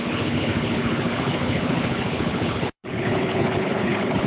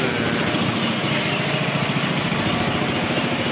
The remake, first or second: first